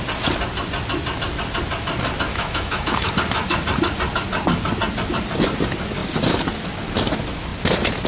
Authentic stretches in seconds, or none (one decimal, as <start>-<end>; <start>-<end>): 0.0-2.3; 3.1-8.1